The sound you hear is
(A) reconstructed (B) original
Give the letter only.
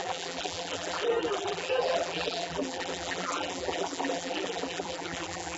A